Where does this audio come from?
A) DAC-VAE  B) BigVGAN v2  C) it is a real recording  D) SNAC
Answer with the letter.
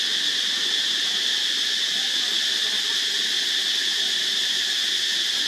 C